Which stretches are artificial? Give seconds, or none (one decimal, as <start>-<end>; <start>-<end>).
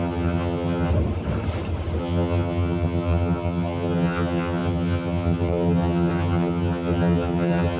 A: 0.0-0.9; 2.0-7.8